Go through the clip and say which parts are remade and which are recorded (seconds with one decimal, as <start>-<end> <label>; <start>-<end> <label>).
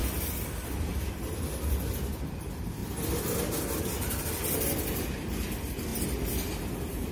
0.0-1.1 recorded; 1.1-2.8 remade; 2.8-3.8 recorded; 3.8-7.1 remade